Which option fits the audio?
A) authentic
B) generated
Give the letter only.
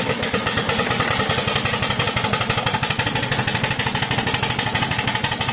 A